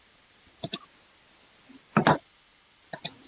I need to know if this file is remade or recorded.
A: recorded